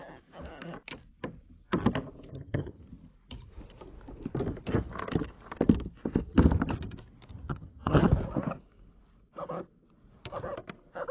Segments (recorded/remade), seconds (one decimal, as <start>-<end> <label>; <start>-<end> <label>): 0.0-2.3 recorded; 2.3-2.9 remade; 2.9-7.3 recorded; 7.3-8.1 remade; 8.1-11.1 recorded